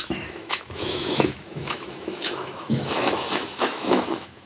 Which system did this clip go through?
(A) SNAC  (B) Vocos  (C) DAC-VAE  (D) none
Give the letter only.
C